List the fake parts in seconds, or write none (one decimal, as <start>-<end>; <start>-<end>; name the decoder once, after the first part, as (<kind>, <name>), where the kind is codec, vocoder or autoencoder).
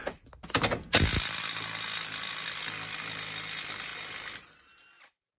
none